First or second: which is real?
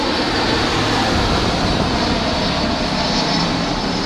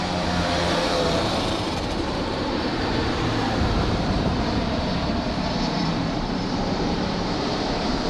first